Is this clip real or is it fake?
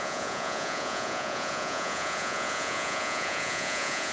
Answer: fake